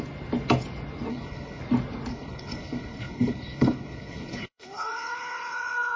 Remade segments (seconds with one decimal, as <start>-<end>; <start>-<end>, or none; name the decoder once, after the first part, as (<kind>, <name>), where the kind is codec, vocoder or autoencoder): 1.1-1.6 (codec, HILCodec); 2.1-6.0